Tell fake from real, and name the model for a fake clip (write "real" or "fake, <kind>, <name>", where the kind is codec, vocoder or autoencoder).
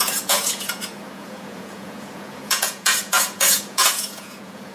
fake, vocoder, Vocos